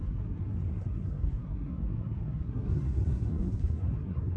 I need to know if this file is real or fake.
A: fake